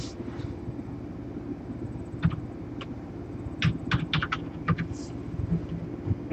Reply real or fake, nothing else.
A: real